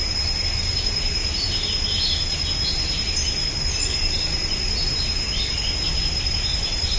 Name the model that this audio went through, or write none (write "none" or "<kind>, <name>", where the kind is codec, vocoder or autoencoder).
none